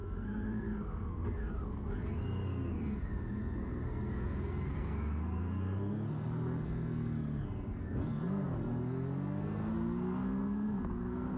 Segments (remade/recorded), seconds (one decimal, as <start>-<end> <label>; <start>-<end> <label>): 0.0-11.4 remade